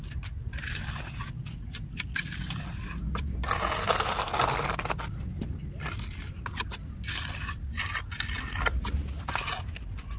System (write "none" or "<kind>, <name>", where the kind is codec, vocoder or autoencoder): none